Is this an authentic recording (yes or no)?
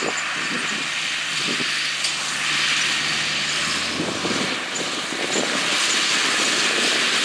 yes